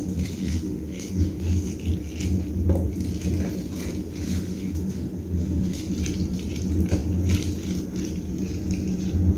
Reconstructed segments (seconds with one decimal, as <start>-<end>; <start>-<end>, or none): 0.0-1.7; 4.0-5.9